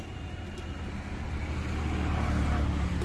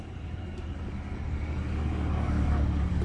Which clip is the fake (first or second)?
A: second